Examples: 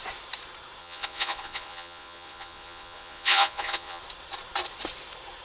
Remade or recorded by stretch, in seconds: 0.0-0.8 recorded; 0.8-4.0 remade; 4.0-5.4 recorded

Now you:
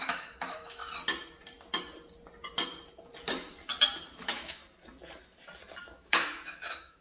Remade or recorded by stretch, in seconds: 0.0-0.8 remade; 0.8-4.1 recorded; 4.1-4.6 remade; 4.6-5.8 recorded; 5.8-7.0 remade